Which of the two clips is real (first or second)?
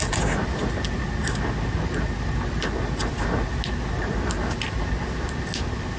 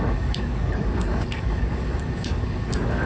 first